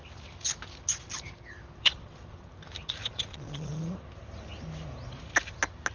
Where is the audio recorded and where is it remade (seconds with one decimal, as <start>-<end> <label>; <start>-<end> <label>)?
0.0-1.8 recorded; 1.8-2.4 remade; 2.4-3.0 recorded; 3.0-3.7 remade; 3.7-5.9 recorded